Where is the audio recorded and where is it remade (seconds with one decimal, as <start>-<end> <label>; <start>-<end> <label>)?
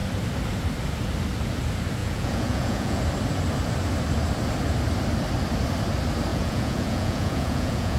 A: 0.0-2.0 recorded; 2.0-3.0 remade; 3.0-6.3 recorded; 6.3-8.0 remade